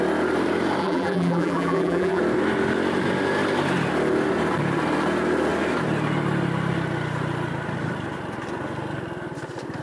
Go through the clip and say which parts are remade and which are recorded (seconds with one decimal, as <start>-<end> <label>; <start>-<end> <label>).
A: 0.0-0.8 recorded; 0.8-2.2 remade; 2.2-9.8 recorded